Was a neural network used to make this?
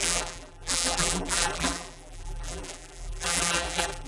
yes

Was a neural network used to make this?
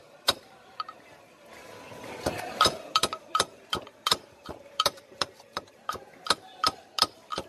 yes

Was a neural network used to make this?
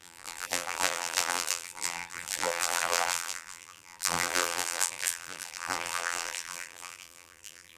yes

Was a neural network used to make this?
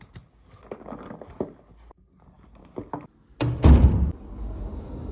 no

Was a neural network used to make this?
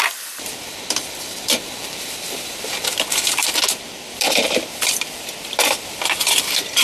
yes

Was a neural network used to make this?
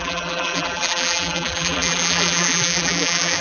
yes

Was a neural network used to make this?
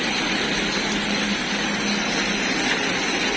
no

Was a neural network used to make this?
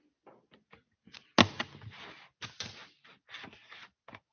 no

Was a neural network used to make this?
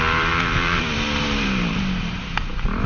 yes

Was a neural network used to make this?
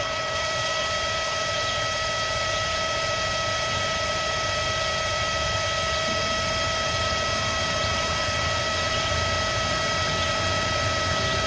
yes